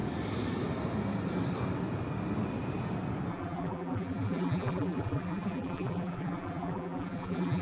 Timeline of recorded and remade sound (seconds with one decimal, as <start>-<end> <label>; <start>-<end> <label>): 0.0-3.3 recorded; 3.3-7.6 remade